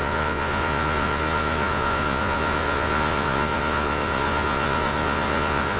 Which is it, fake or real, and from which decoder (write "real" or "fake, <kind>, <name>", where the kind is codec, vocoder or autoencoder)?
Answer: fake, vocoder, Vocos